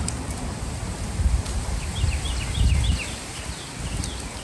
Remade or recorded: recorded